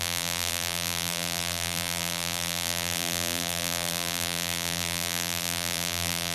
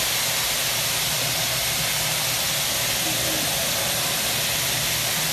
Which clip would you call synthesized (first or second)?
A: first